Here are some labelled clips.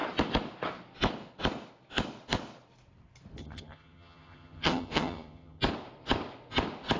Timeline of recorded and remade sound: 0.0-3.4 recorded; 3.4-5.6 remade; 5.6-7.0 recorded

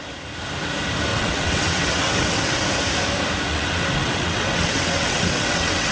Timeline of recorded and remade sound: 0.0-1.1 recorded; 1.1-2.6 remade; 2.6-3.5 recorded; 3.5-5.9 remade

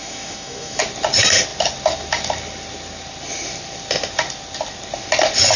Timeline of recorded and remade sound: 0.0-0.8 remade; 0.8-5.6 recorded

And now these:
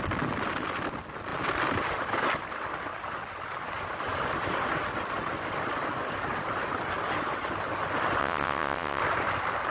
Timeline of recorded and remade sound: 0.0-8.2 recorded; 8.2-9.0 remade; 9.0-9.7 recorded

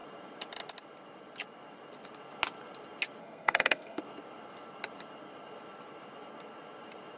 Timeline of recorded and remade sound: 0.0-3.2 recorded; 3.2-4.0 remade; 4.0-7.2 recorded

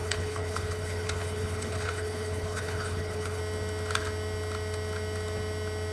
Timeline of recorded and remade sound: 0.0-3.4 remade; 3.4-5.9 recorded

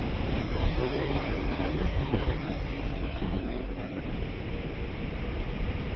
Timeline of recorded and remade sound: 0.0-0.4 recorded; 0.4-4.0 remade; 4.0-6.0 recorded